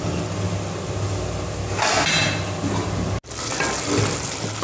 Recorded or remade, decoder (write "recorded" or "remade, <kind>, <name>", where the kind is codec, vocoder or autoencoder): recorded